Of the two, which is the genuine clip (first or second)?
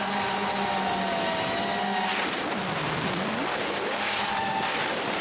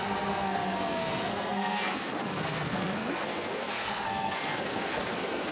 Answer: first